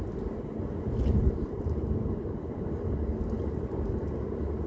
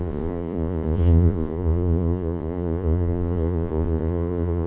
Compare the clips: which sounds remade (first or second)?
second